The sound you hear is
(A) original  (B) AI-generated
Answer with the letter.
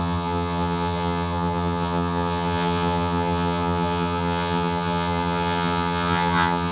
B